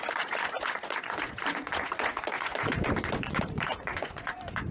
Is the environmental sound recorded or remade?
remade